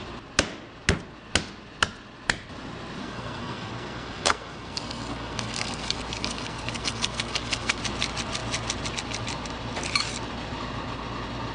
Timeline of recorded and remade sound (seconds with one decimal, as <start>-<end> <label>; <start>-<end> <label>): 0.0-3.0 recorded; 3.0-7.8 remade; 7.8-11.5 recorded